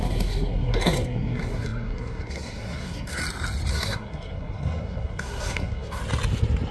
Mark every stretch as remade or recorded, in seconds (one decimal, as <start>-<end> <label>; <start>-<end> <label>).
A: 0.0-3.2 remade; 3.2-3.7 recorded; 3.7-6.0 remade; 6.0-6.7 recorded